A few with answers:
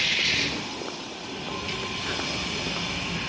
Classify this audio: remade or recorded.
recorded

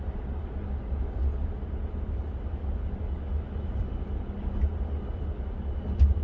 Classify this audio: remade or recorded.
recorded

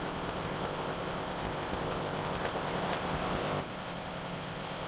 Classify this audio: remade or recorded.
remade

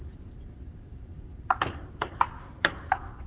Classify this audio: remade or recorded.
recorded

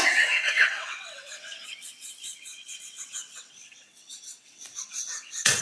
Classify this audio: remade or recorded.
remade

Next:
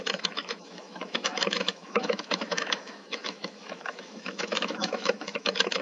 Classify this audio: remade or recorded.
remade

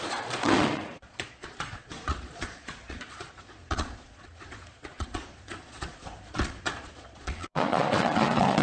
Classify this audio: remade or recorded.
remade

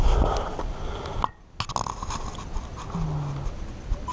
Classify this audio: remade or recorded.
recorded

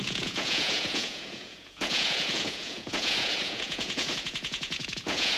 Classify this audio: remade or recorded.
remade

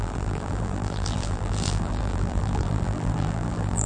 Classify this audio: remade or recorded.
remade